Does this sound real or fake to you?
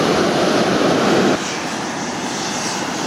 real